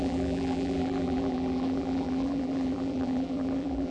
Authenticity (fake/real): fake